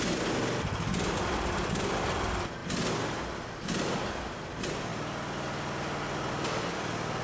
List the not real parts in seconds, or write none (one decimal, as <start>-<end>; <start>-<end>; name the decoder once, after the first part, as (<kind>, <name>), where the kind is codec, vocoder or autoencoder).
none